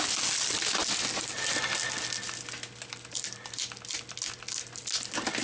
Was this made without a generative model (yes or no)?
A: yes